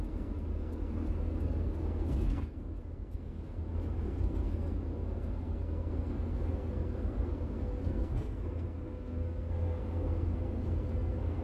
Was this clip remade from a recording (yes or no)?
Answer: yes